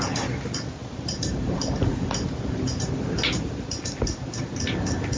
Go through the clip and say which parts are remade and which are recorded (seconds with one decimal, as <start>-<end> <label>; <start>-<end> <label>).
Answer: 0.0-0.8 recorded; 0.8-2.8 remade; 2.8-5.2 recorded